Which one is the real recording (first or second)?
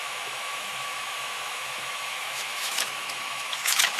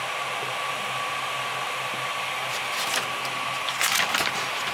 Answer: second